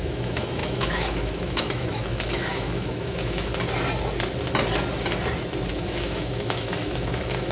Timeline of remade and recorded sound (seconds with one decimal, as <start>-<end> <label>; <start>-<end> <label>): 0.0-3.5 remade; 3.5-5.7 recorded; 5.7-7.5 remade